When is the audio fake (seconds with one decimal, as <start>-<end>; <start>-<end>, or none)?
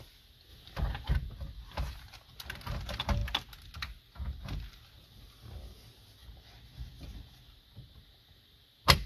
none